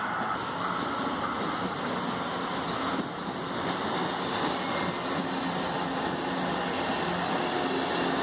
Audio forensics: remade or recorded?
recorded